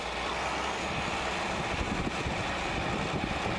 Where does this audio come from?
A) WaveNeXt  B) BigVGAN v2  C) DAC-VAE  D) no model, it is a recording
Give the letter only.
B